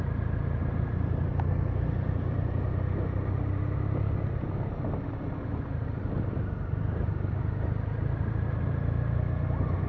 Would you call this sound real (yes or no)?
yes